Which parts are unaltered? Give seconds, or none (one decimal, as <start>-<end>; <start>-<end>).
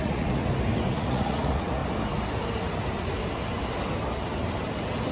0.4-0.9; 1.8-5.1